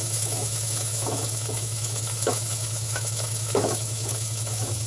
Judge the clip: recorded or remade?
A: remade